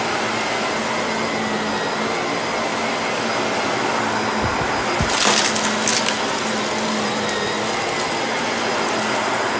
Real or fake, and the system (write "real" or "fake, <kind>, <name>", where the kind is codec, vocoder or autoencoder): real